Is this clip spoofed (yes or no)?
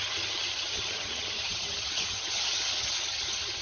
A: yes